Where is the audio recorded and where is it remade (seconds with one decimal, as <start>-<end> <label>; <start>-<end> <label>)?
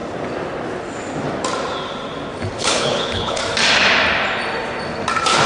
0.0-2.6 recorded; 2.6-3.4 remade; 3.4-5.5 recorded